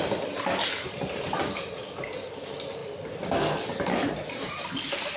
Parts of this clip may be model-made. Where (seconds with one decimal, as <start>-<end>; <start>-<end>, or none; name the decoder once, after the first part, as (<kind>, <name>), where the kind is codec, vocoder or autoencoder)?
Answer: none